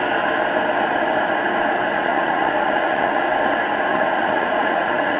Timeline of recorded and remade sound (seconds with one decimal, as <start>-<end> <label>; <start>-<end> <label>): 0.0-1.9 recorded; 1.9-3.2 remade; 3.2-3.9 recorded; 3.9-5.2 remade